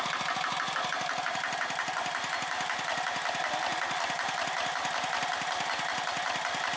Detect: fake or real real